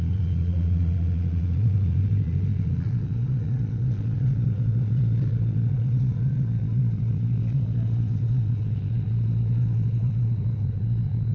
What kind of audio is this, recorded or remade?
remade